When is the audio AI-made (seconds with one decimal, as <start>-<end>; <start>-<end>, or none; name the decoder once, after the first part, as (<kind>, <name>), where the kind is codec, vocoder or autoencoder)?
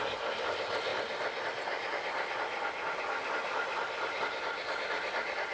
none